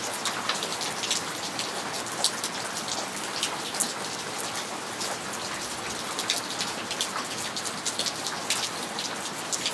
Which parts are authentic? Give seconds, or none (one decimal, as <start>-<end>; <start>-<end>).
0.0-9.7